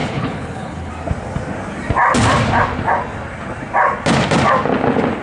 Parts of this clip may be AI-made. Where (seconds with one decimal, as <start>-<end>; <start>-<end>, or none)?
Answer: 0.0-0.9